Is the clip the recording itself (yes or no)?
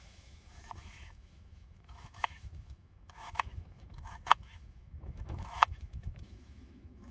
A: no